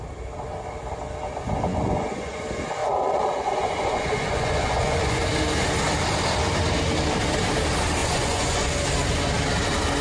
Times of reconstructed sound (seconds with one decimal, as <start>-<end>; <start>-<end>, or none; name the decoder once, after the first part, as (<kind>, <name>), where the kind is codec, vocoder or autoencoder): 1.7-2.4 (vocoder, Vocos); 2.8-5.2; 8.0-8.7